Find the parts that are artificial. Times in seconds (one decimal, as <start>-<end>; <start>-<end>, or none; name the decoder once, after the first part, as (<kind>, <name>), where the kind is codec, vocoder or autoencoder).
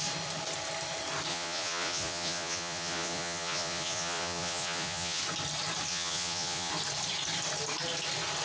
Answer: 1.3-5.2 (vocoder, Vocos); 5.9-6.7